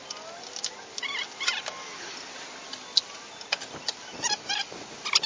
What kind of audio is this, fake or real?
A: real